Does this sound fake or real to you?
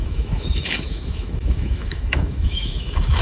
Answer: fake